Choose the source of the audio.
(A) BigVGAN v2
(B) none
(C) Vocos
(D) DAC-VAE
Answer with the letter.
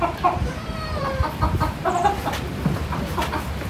A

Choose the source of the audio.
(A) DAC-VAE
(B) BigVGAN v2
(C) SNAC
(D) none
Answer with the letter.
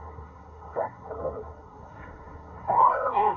C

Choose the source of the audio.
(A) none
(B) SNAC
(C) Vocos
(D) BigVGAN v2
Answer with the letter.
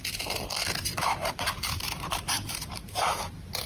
D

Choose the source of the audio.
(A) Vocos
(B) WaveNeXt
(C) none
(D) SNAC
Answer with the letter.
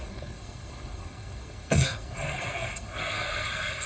D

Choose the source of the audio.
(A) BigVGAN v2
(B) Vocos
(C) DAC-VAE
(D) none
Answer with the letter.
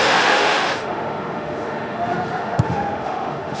C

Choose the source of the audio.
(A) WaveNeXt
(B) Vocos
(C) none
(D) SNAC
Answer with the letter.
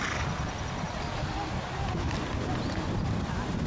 C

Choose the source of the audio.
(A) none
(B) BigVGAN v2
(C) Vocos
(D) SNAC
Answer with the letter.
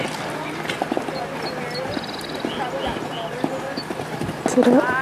A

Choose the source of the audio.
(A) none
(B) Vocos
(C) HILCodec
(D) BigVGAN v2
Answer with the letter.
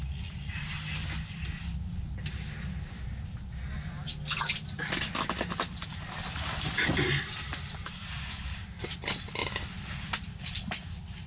A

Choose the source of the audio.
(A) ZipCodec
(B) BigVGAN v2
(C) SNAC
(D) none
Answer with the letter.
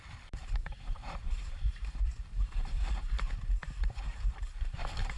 B